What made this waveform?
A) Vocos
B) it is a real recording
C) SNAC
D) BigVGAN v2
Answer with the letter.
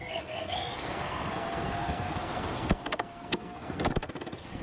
C